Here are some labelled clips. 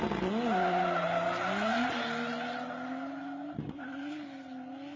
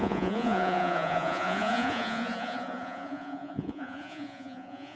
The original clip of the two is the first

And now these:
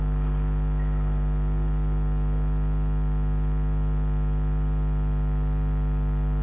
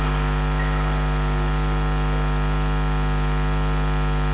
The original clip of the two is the second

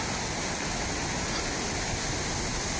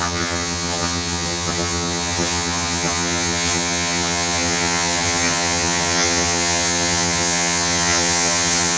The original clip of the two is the first